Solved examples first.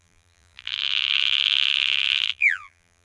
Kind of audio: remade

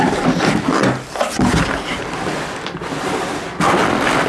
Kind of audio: recorded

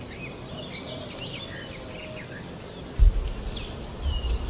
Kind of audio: recorded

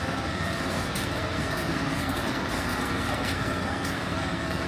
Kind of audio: remade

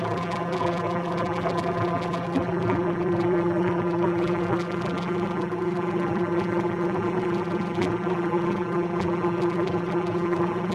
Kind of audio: remade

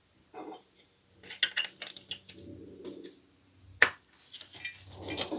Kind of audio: recorded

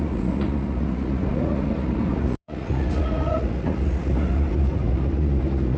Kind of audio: remade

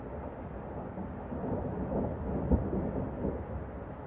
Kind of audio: recorded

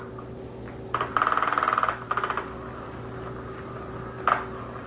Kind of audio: recorded